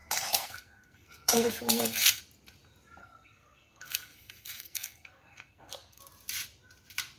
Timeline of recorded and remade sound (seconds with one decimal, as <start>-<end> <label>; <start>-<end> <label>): 0.0-2.2 remade; 2.2-3.0 recorded; 3.0-6.0 remade; 6.0-7.2 recorded